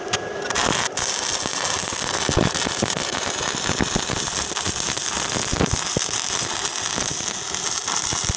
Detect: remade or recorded recorded